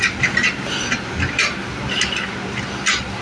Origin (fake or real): real